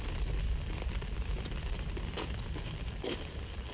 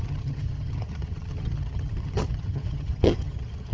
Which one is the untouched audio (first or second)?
first